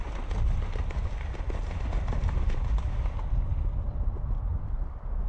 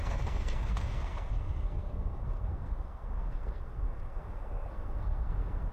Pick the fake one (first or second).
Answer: second